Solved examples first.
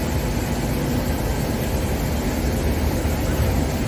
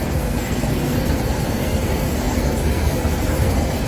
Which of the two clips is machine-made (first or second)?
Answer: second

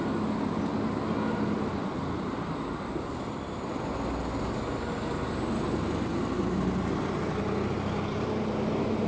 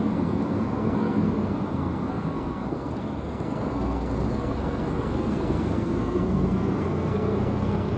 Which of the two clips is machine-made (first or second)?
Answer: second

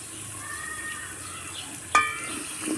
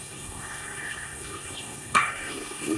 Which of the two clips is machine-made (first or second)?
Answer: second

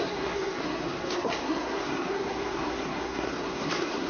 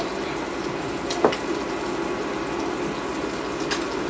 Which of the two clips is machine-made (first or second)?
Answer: first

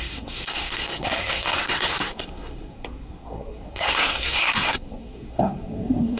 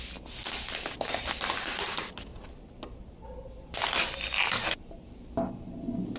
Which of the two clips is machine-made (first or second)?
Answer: first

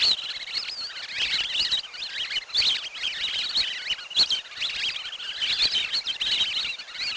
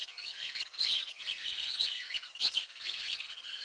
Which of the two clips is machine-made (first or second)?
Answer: second